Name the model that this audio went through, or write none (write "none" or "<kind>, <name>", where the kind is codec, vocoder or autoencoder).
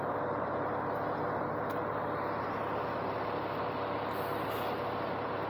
none